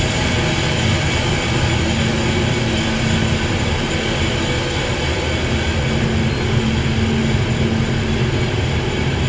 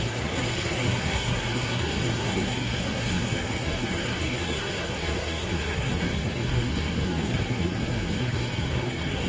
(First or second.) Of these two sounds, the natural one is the first